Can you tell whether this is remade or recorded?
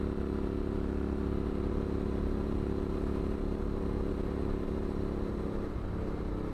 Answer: recorded